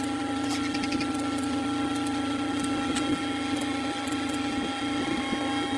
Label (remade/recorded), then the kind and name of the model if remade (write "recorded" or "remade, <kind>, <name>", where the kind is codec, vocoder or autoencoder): recorded